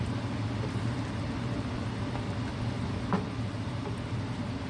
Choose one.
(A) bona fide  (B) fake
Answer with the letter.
B